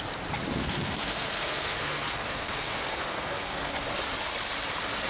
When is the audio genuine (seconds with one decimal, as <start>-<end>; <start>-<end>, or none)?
0.0-0.6; 3.7-5.1